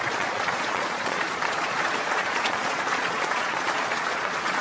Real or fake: fake